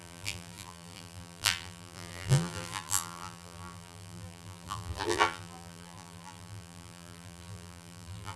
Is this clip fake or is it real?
fake